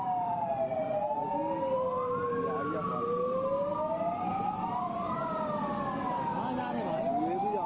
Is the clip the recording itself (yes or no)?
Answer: yes